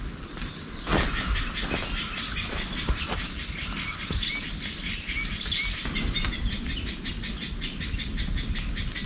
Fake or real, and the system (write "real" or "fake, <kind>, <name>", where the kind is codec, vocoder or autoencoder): real